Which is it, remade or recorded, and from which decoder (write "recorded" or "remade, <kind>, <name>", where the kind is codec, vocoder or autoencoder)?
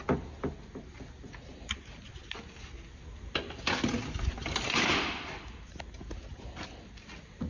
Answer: recorded